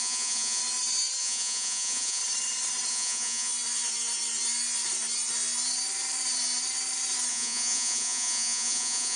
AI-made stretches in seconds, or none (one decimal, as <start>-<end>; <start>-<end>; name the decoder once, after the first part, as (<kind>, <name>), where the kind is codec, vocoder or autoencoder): 0.0-0.6 (vocoder, Vocos); 1.2-2.2; 2.9-3.5; 7.3-9.2